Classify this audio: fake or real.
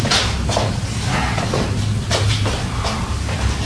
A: real